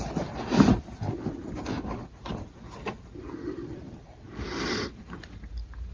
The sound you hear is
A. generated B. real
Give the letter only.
B